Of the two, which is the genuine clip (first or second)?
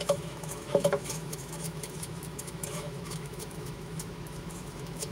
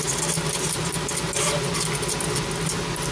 second